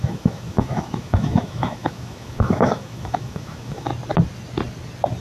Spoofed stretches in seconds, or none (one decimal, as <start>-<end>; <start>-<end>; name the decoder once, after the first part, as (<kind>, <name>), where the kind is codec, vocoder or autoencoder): 0.0-3.9 (autoencoder, DAC-VAE)